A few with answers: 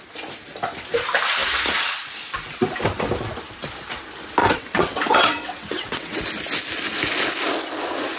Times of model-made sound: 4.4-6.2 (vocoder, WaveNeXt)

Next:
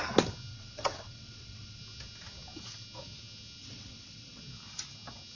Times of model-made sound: 0.5-1.8 (vocoder, WaveNeXt); 3.6-4.4

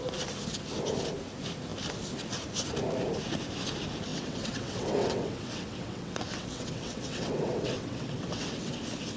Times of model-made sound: 4.1-8.7 (vocoder, WaveNeXt)